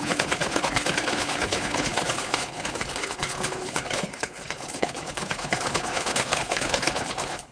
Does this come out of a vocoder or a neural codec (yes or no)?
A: yes